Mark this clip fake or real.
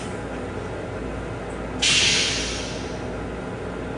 real